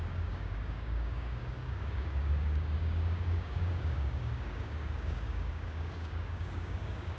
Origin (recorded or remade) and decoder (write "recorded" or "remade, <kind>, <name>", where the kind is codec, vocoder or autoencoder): remade, codec, DAC